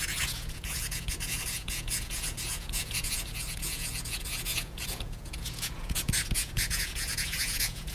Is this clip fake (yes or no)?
yes